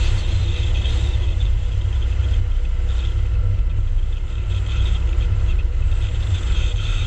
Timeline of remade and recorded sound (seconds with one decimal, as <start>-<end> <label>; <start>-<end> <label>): 0.0-0.4 remade; 0.4-0.9 recorded; 0.9-2.2 remade; 2.2-4.2 recorded; 4.2-7.1 remade